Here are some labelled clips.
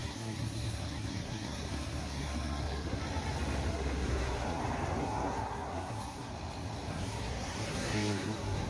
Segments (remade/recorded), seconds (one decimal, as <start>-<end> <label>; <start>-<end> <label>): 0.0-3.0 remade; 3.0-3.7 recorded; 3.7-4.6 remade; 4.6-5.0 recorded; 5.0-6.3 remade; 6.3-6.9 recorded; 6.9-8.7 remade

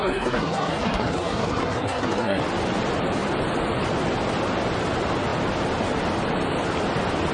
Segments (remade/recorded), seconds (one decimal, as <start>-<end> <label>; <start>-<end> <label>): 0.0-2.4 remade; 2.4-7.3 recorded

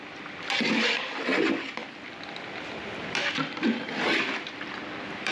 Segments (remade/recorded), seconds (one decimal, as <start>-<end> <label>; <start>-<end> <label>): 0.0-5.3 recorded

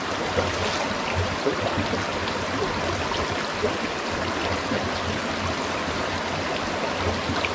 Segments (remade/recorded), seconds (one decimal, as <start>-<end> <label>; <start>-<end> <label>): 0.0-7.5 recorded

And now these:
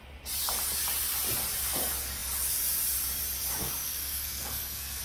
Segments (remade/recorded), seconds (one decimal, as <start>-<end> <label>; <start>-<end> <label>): 0.0-3.6 recorded; 3.6-5.0 remade

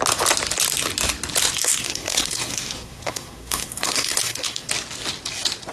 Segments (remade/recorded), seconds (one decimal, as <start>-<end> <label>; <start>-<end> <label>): 0.0-1.6 recorded; 1.6-4.7 remade; 4.7-5.7 recorded